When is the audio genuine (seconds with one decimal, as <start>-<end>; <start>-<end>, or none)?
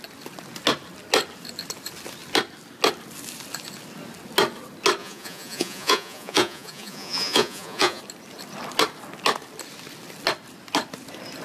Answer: 0.0-5.0; 8.0-11.4